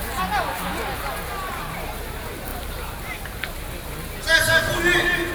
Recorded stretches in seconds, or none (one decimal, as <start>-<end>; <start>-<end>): 0.0-5.3